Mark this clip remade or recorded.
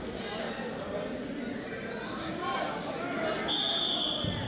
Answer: recorded